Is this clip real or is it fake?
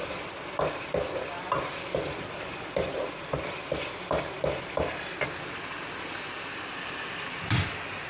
fake